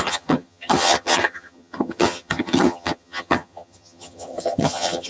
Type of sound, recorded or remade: remade